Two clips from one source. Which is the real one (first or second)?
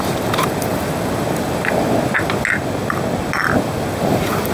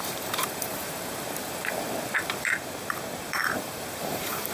first